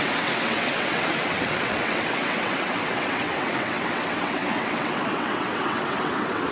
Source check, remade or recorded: remade